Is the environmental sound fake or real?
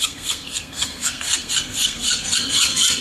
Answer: fake